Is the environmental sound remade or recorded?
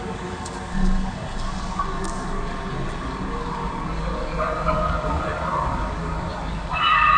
remade